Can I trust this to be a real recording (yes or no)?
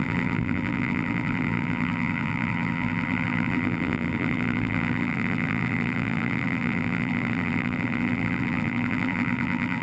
no